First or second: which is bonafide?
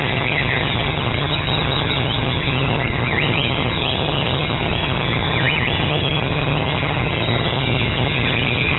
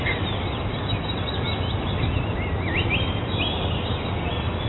second